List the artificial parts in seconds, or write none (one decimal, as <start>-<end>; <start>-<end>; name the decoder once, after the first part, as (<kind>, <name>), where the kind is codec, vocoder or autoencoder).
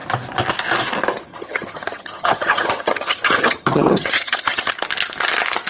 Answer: 1.3-4.7 (vocoder, HiFi-GAN)